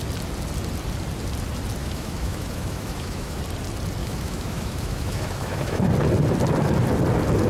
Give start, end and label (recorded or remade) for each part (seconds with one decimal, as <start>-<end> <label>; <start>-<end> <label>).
0.0-1.8 recorded; 1.8-3.4 remade; 3.4-4.0 recorded; 4.0-5.8 remade; 5.8-7.5 recorded